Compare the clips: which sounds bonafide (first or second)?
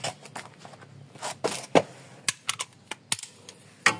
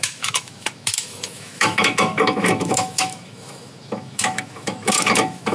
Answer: first